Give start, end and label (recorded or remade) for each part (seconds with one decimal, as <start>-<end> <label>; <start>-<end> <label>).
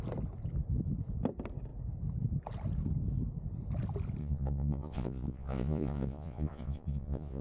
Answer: 0.0-4.2 recorded; 4.2-7.4 remade